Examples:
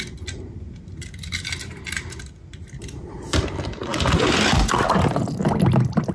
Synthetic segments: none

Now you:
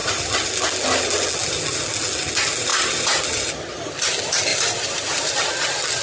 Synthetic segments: 2.7-3.2 (vocoder, BigVGAN v2); 4.5-5.5

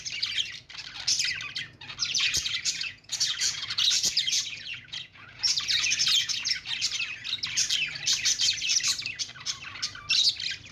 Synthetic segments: 2.0-6.7 (vocoder, Vocos)

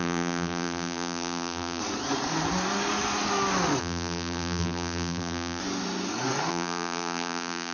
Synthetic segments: 0.0-1.8 (vocoder, BigVGAN v2); 3.8-5.6; 6.5-7.7